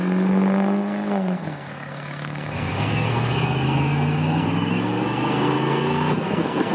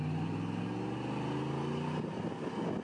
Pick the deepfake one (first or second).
first